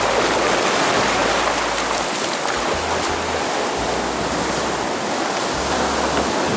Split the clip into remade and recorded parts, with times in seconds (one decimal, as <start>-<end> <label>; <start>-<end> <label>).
0.0-6.6 recorded